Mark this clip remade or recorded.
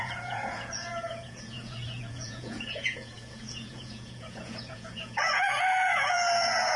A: remade